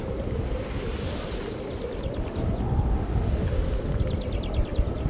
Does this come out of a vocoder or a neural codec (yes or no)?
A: no